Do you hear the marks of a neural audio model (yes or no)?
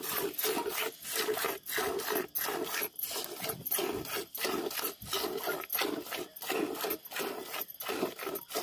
no